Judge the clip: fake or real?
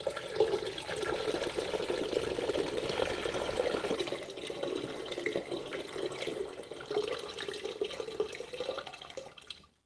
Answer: real